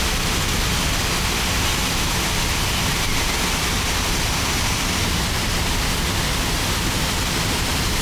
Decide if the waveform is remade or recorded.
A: recorded